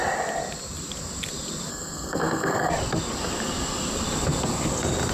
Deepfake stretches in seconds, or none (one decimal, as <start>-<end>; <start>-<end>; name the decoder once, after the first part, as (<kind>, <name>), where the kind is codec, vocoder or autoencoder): 1.7-2.7 (codec, SNAC)